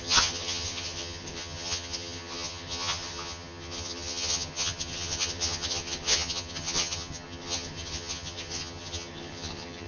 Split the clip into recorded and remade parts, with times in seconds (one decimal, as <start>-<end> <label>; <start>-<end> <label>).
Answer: 0.0-9.9 remade